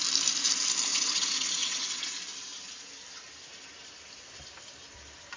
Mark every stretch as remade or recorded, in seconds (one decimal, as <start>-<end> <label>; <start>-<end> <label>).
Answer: 0.0-0.9 recorded; 0.9-2.1 remade; 2.1-5.4 recorded